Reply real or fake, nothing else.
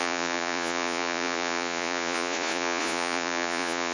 fake